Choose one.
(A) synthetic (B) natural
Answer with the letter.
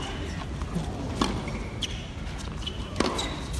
B